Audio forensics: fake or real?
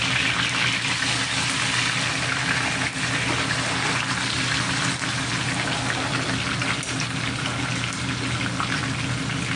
real